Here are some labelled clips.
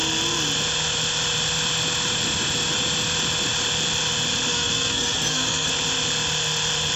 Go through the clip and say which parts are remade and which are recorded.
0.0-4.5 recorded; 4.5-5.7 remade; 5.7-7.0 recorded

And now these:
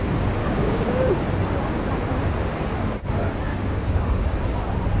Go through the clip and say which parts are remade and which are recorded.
0.0-0.4 recorded; 0.4-1.1 remade; 1.1-3.5 recorded; 3.5-4.4 remade; 4.4-5.0 recorded

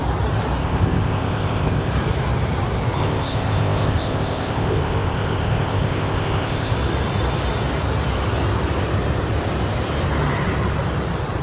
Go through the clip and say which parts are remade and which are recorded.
0.0-0.6 recorded; 0.6-1.9 remade; 1.9-3.0 recorded; 3.0-6.7 remade; 6.7-11.4 recorded

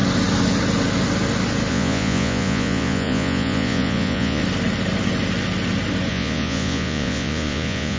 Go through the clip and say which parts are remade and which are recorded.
0.0-1.7 recorded; 1.7-4.4 remade; 4.4-6.1 recorded; 6.1-8.0 remade

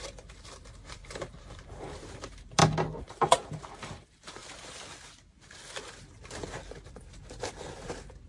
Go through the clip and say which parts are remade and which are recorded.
0.0-2.6 remade; 2.6-3.1 recorded; 3.1-4.4 remade; 4.4-7.1 recorded; 7.1-8.3 remade

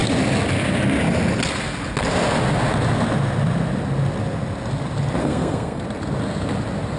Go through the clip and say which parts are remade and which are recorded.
0.0-5.2 recorded; 5.2-5.8 remade; 5.8-7.0 recorded